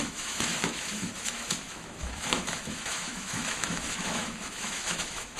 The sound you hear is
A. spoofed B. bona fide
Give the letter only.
A